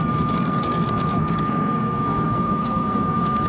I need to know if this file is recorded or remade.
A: remade